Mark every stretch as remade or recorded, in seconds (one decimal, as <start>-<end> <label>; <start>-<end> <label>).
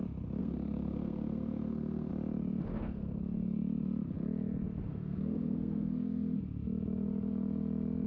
0.0-0.4 recorded; 0.4-2.1 remade; 2.1-2.7 recorded; 2.7-3.2 remade; 3.2-4.9 recorded; 4.9-6.4 remade; 6.4-8.1 recorded